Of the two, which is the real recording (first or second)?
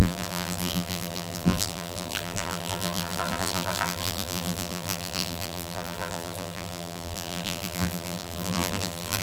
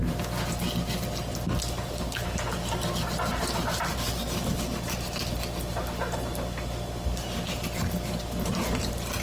second